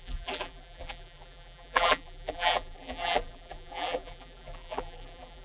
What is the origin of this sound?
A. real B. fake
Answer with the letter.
B